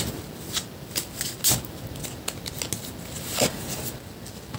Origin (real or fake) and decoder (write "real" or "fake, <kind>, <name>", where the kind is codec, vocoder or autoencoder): real